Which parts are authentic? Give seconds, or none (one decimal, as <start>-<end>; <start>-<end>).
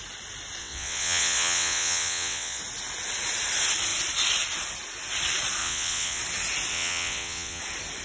0.0-0.6; 2.6-5.6; 6.2-6.7; 7.6-8.0